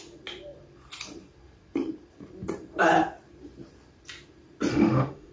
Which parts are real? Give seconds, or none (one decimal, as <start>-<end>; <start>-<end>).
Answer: 0.0-4.7